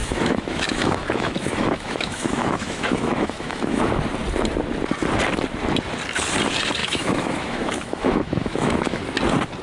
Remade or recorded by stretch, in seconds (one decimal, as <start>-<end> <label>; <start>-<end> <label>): 0.0-3.8 remade; 3.8-6.8 recorded; 6.8-9.0 remade; 9.0-9.6 recorded